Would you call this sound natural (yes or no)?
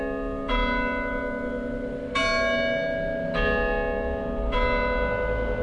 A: yes